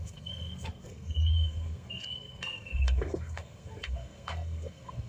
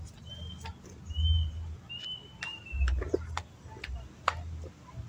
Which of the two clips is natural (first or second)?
second